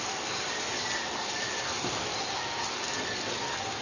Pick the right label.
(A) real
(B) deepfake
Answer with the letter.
A